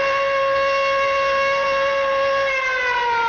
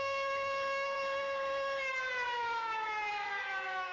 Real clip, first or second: first